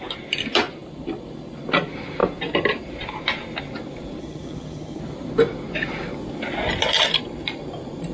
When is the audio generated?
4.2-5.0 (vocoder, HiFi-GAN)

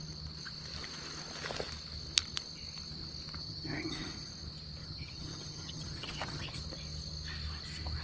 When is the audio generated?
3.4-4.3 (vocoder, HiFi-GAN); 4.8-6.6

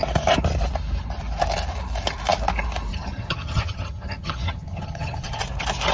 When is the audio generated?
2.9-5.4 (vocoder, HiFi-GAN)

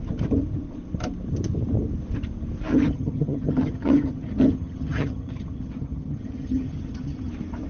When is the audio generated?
2.7-7.3 (vocoder, HiFi-GAN)

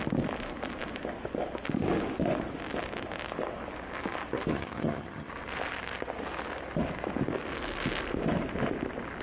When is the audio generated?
4.5-5.3 (vocoder, HiFi-GAN)

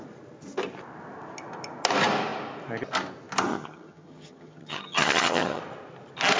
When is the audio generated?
3.5-5.6 (vocoder, HiFi-GAN)

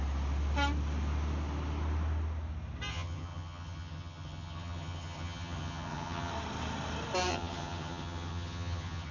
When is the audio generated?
2.9-6.3 (vocoder, HiFi-GAN); 7.3-9.1

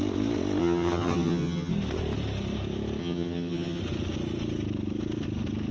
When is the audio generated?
0.6-1.7 (vocoder, HiFi-GAN); 3.0-3.8